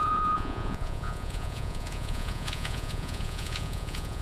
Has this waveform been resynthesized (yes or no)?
yes